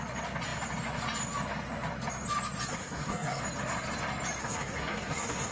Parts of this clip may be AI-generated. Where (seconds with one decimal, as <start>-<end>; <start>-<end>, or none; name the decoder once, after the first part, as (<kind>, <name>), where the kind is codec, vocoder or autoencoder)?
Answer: 2.7-3.4 (codec, SNAC); 4.4-5.5